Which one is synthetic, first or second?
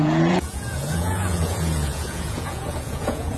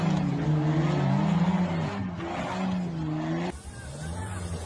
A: first